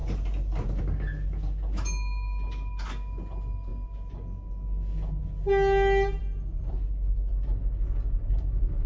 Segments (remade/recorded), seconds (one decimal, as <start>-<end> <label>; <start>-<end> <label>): 0.0-6.2 recorded; 6.2-6.7 remade; 6.7-8.9 recorded